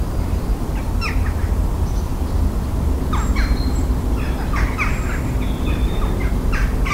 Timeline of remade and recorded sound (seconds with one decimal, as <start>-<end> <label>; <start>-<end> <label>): 0.0-6.9 recorded